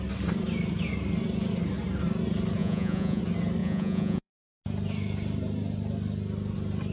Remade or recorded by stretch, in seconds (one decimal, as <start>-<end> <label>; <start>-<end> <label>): 0.0-2.6 recorded; 2.6-3.2 remade; 3.2-3.6 recorded; 3.6-4.3 remade; 4.3-6.9 recorded